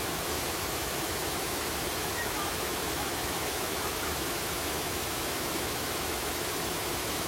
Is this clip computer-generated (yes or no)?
yes